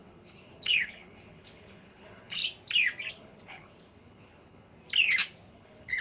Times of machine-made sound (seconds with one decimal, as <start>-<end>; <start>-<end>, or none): 0.0-2.4; 3.1-4.7; 5.5-6.0